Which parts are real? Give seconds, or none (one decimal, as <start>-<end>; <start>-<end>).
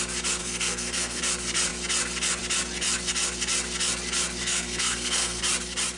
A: 0.0-0.4; 1.2-4.4; 5.4-6.0